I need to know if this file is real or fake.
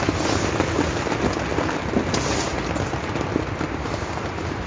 real